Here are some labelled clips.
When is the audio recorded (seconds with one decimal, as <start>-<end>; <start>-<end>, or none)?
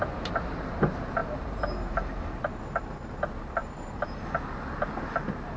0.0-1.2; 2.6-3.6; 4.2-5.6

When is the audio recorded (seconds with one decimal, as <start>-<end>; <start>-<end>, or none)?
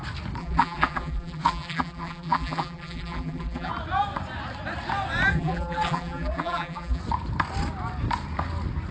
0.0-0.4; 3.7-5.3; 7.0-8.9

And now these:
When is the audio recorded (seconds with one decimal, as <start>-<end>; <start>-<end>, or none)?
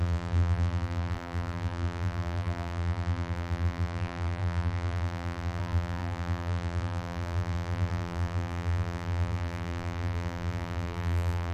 none